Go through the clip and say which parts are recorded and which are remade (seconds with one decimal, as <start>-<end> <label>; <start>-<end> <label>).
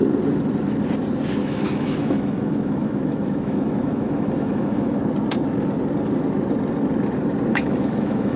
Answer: 0.0-1.4 recorded; 1.4-5.0 remade; 5.0-7.5 recorded; 7.5-8.4 remade